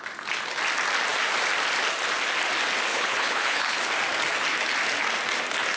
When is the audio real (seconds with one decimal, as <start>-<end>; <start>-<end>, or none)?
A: 0.0-2.9; 3.8-5.8